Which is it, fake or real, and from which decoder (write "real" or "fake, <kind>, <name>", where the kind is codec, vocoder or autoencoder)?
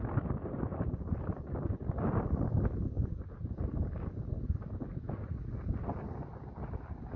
real